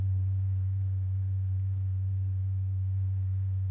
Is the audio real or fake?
fake